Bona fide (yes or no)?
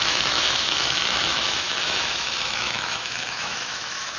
no